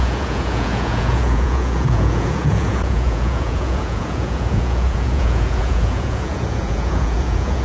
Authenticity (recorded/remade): remade